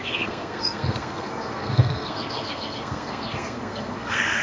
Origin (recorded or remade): remade